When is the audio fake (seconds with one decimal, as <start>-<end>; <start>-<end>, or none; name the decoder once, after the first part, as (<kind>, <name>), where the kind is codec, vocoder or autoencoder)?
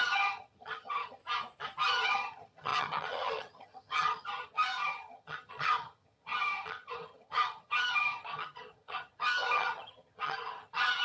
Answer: 0.0-1.2 (vocoder, HiFi-GAN); 1.9-11.0